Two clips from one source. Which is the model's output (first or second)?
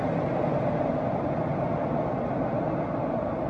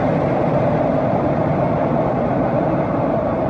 second